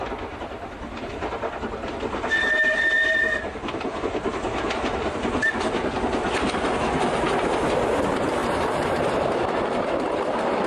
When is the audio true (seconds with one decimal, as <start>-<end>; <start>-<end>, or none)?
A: 0.0-8.4; 9.2-10.7